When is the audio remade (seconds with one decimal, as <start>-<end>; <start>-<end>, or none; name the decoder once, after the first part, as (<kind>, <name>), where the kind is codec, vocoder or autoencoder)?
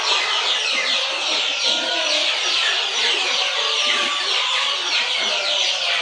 3.9-4.9 (vocoder, BigVGAN v2)